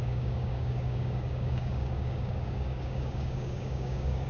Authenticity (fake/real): fake